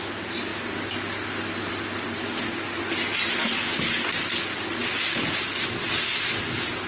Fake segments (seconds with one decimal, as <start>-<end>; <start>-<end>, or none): none